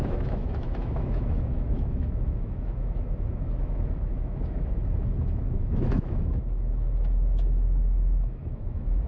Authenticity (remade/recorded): remade